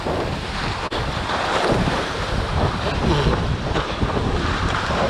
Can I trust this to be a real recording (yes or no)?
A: yes